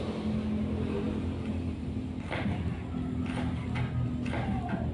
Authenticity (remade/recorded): recorded